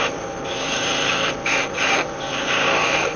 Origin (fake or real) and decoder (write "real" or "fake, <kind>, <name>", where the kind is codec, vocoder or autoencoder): fake, vocoder, BigVGAN v2